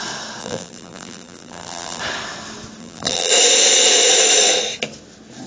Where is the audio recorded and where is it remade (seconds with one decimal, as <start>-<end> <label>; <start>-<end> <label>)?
0.0-0.4 recorded; 0.4-2.0 remade; 2.0-2.8 recorded; 2.8-3.3 remade; 3.3-5.5 recorded